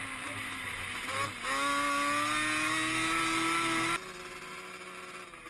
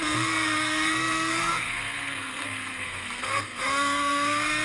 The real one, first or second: first